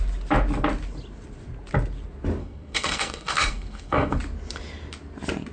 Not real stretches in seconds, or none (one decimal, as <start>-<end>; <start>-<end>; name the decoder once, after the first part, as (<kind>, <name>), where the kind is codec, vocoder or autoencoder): 2.4-4.2 (codec, SNAC)